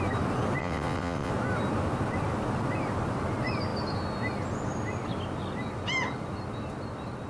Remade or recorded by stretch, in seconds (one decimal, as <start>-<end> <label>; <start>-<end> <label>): 0.0-0.6 recorded; 0.6-1.3 remade; 1.3-7.3 recorded